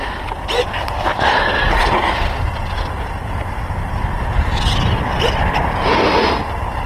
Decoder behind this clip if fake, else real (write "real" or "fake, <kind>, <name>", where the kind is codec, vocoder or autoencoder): real